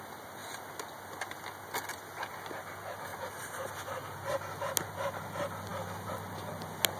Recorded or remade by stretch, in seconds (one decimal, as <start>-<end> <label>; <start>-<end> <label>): 0.0-3.1 recorded; 3.1-3.7 remade; 3.7-7.0 recorded